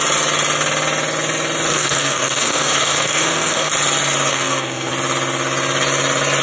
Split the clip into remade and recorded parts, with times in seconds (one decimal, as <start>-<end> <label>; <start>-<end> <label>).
0.0-1.7 recorded; 1.7-3.7 remade; 3.7-4.3 recorded; 4.3-4.9 remade; 4.9-6.4 recorded